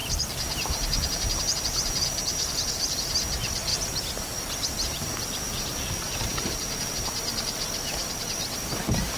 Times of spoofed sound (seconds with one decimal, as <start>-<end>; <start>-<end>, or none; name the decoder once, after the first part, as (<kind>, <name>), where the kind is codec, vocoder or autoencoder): 0.0-3.0 (vocoder, BigVGAN v2); 3.7-6.9